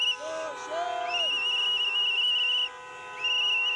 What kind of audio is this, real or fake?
real